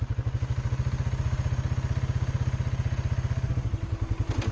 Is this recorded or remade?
recorded